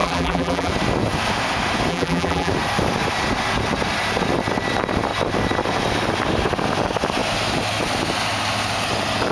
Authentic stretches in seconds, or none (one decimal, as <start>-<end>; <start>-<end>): 0.7-1.9; 2.5-9.3